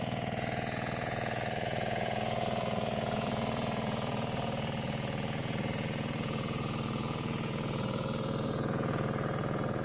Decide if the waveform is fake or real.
fake